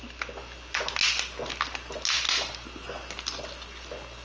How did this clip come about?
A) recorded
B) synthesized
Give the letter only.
A